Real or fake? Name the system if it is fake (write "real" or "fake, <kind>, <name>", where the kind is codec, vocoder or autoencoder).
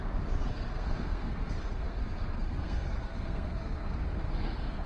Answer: fake, codec, SNAC